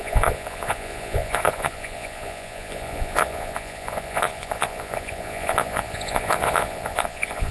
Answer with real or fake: fake